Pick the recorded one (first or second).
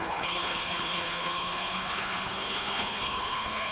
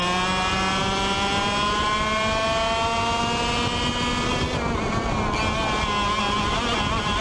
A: second